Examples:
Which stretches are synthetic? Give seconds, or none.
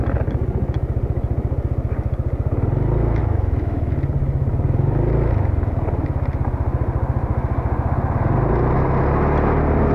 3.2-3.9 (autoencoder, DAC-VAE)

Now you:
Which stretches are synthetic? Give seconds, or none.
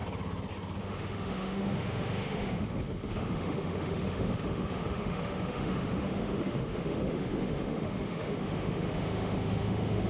0.8-10.1 (autoencoder, DAC-VAE)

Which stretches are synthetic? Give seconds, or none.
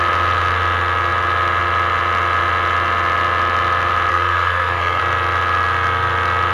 4.1-5.0 (codec, SNAC)